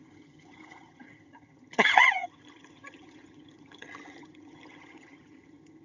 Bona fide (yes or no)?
no